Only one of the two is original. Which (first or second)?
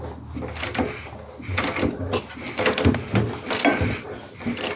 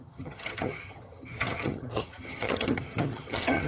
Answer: first